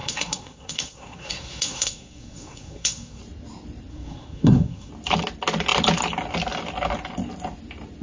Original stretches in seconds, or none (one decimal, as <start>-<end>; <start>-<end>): 3.2-3.9; 4.9-8.0